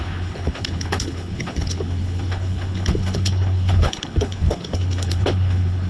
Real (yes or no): no